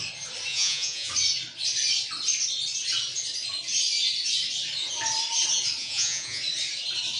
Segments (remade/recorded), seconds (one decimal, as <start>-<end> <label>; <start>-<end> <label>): 0.0-0.5 recorded; 0.5-1.1 remade; 1.1-5.8 recorded; 5.8-6.4 remade; 6.4-7.2 recorded